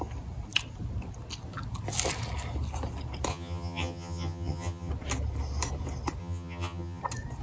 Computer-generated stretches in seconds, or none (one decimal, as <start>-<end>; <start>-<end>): 3.3-4.9; 6.2-7.0